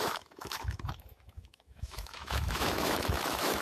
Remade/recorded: remade